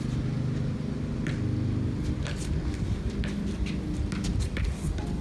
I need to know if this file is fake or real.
real